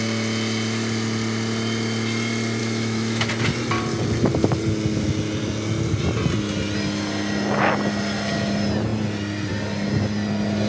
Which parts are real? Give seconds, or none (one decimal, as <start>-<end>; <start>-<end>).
0.0-2.6; 3.3-10.7